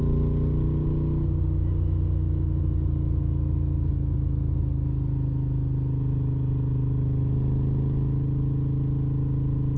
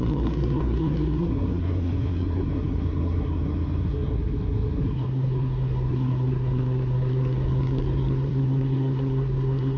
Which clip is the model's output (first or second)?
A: second